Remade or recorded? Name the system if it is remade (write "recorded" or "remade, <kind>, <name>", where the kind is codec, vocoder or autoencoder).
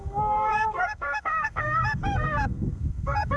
remade, codec, SNAC